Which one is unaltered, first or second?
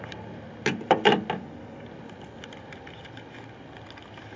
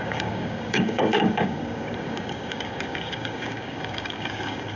first